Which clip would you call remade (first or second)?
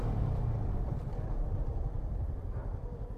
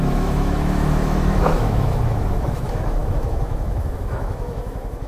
second